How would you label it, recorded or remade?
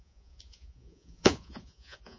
remade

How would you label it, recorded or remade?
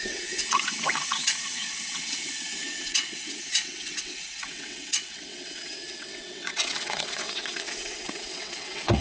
remade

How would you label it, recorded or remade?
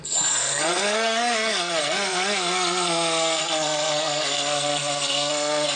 remade